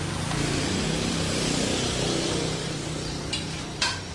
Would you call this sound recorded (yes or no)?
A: no